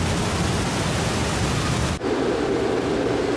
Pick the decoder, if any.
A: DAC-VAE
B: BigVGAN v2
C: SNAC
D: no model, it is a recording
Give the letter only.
D